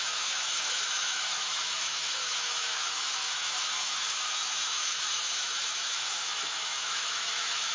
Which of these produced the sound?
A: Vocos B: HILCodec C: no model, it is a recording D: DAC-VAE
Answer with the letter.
D